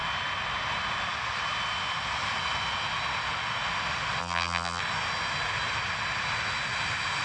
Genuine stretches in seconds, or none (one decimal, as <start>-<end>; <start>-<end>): 0.0-4.2; 4.8-7.2